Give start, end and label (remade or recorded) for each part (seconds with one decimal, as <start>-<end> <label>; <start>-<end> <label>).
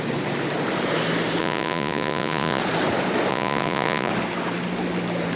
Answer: 0.0-1.4 recorded; 1.4-2.6 remade; 2.6-3.3 recorded; 3.3-4.1 remade; 4.1-5.4 recorded